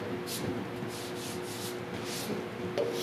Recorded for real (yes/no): yes